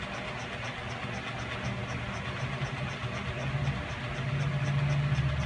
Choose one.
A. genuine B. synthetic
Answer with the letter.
A